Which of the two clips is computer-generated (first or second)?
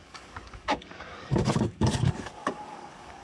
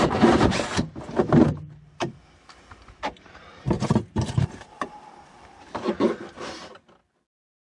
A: first